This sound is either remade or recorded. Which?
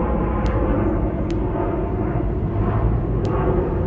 recorded